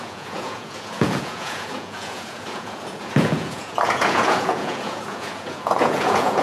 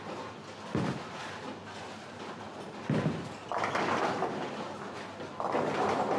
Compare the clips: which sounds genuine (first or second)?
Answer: second